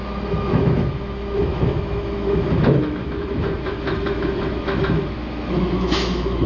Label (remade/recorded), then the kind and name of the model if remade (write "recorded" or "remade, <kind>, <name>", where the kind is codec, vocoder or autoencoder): remade, autoencoder, DAC-VAE